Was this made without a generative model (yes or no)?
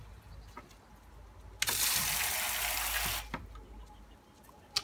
yes